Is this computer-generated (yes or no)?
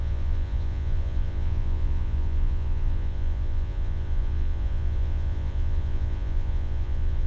yes